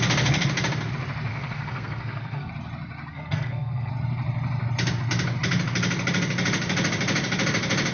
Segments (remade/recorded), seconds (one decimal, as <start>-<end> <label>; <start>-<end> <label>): 0.0-1.3 recorded; 1.3-2.5 remade; 2.5-3.1 recorded; 3.1-3.9 remade; 3.9-7.9 recorded